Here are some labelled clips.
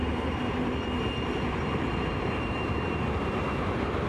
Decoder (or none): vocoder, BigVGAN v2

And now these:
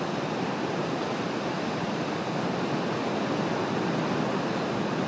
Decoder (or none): none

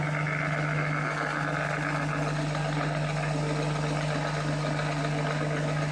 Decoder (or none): none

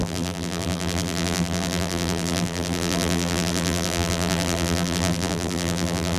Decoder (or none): vocoder, BigVGAN v2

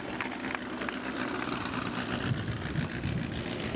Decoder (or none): none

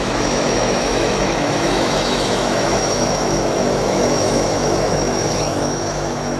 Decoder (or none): autoencoder, DAC-VAE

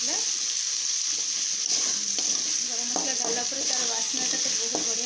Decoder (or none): none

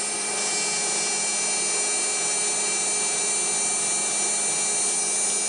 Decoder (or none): none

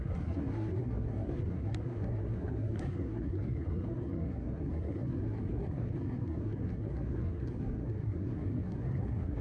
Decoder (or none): codec, SNAC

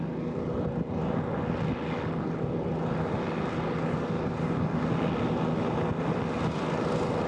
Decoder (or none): none